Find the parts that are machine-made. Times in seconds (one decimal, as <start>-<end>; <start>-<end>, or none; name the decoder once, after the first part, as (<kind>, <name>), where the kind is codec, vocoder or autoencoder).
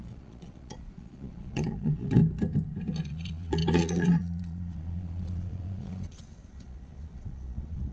0.0-2.2 (vocoder, Vocos); 3.0-7.9